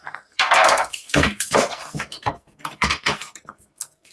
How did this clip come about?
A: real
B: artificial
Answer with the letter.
B